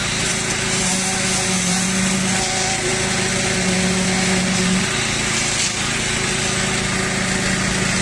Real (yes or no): yes